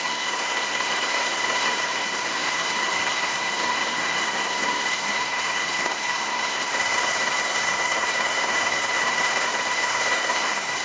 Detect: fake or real fake